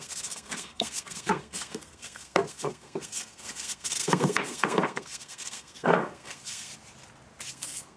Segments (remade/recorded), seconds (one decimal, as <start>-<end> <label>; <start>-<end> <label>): 0.0-6.7 remade; 6.7-7.5 recorded; 7.5-8.0 remade